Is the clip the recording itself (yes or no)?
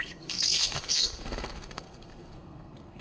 no